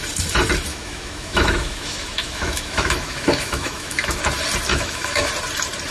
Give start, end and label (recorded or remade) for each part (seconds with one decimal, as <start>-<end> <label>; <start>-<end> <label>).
0.0-0.7 recorded; 0.7-4.2 remade; 4.2-4.7 recorded; 4.7-5.3 remade; 5.3-5.9 recorded